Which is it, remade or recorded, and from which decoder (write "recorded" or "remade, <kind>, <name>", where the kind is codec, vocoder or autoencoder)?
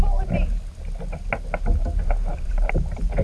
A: recorded